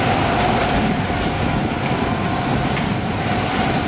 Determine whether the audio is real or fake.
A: fake